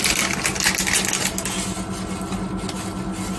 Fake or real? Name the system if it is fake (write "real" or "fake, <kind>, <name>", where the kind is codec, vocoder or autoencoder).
real